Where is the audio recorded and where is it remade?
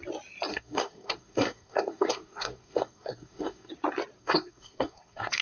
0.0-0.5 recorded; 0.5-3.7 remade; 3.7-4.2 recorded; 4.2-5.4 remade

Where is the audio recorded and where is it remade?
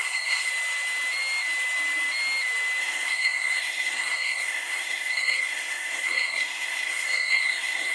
0.0-0.5 remade; 0.5-2.8 recorded; 2.8-7.9 remade